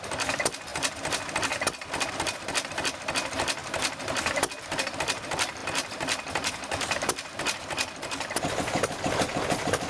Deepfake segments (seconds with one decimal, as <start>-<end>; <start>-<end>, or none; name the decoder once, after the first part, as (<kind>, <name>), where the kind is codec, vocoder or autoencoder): none